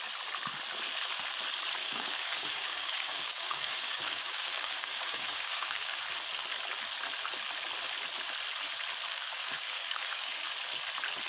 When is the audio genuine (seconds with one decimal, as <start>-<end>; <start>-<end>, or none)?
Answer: 0.0-1.8; 6.0-9.1; 10.5-11.3